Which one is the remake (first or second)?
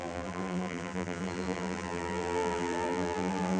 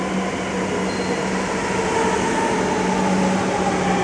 first